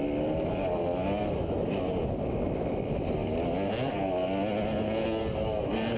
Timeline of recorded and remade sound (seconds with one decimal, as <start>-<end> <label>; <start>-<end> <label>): 0.0-6.0 recorded